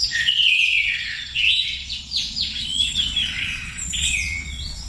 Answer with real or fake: fake